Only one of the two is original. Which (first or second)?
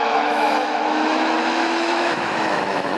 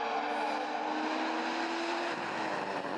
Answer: second